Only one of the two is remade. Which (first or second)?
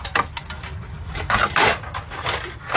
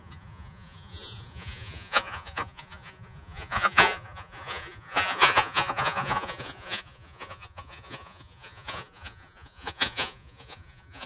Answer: second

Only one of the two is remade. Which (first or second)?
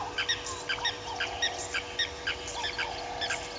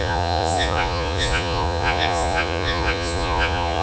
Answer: second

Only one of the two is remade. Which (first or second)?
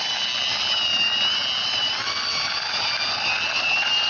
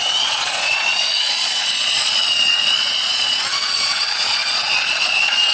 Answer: second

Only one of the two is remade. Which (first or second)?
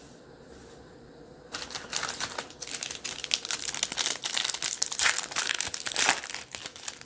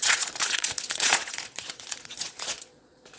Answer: second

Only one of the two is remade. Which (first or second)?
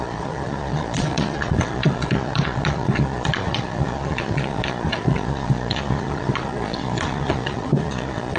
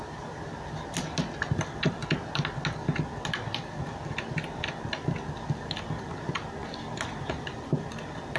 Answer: first